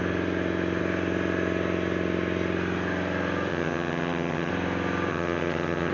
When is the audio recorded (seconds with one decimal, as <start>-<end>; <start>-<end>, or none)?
0.0-3.5; 4.5-5.1